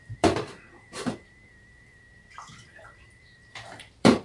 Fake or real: fake